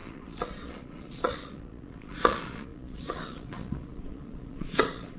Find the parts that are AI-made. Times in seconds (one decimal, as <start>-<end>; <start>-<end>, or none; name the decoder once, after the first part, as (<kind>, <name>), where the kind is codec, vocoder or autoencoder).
0.0-5.2 (vocoder, Vocos)